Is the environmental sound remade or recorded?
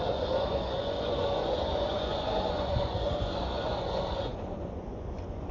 remade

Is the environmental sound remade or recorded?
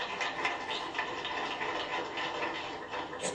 recorded